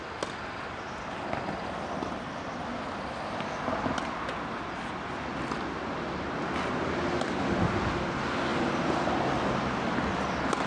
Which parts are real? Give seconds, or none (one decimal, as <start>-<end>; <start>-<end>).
0.0-10.7